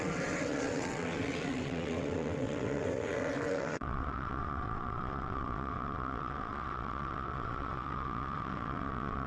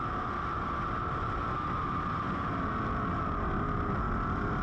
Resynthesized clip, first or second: first